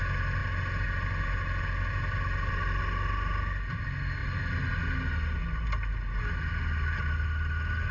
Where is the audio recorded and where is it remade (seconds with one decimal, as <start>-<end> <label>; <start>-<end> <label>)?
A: 0.0-7.9 recorded